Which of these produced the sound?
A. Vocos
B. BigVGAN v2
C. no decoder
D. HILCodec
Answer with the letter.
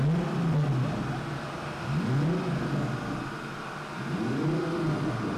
C